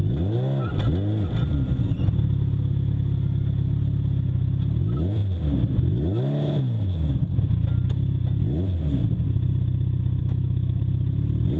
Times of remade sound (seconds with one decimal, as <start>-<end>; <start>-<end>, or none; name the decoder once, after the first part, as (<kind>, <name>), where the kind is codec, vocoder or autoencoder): 10.2-10.8 (autoencoder, DAC-VAE)